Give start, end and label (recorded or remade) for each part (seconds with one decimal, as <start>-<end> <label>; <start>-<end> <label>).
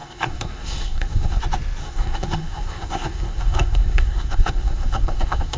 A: 0.0-1.4 remade; 1.4-1.8 recorded; 1.8-5.6 remade